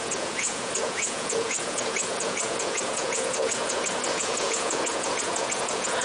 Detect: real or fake fake